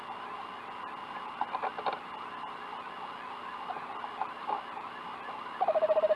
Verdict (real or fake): real